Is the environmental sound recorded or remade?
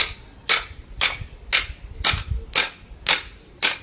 recorded